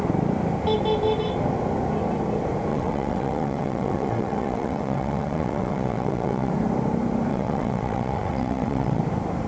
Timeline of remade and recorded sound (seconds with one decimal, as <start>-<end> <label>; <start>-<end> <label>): 0.0-2.7 recorded; 2.7-6.5 remade; 6.5-7.3 recorded; 7.3-9.0 remade; 9.0-9.5 recorded